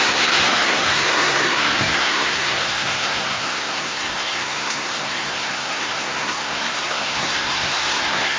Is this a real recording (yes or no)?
no